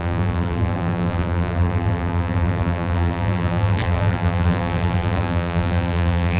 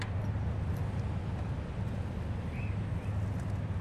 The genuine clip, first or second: second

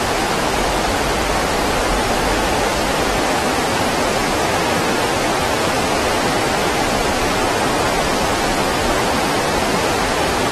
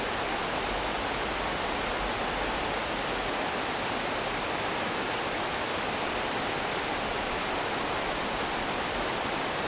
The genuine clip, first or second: second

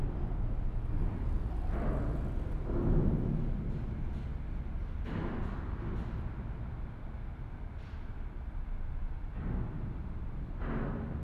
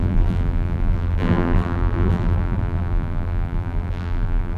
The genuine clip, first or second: first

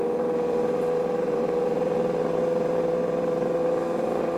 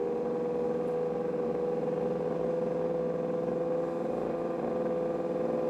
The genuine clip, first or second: second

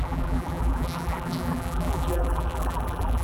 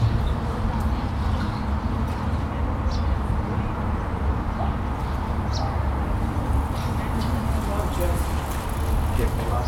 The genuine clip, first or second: second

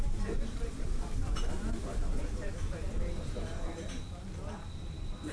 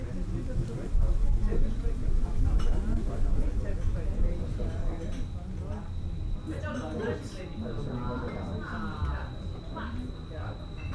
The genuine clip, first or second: second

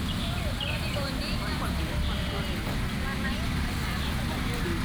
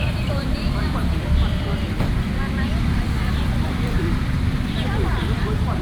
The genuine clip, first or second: first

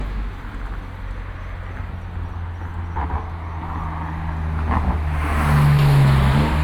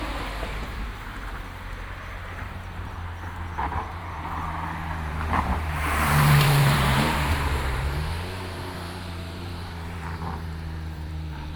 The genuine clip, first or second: first